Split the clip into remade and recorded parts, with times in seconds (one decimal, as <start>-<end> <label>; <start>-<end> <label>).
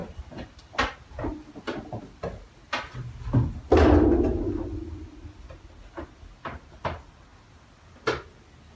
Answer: 0.0-8.8 recorded